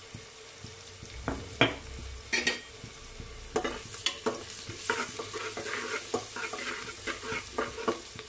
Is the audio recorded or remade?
recorded